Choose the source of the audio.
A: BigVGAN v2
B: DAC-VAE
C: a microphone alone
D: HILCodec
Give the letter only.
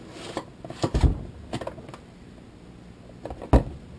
C